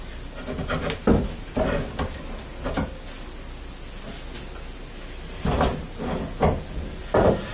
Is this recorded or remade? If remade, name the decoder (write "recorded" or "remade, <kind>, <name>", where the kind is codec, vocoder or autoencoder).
recorded